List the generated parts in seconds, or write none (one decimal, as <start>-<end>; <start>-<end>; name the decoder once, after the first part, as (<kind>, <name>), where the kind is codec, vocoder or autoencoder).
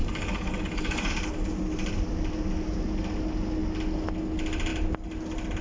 0.0-1.1 (codec, DAC)